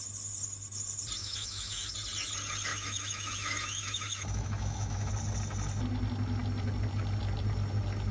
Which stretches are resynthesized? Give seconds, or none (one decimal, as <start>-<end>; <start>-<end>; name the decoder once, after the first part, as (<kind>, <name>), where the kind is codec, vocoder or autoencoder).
1.2-1.9 (autoencoder, DAC-VAE); 2.7-5.1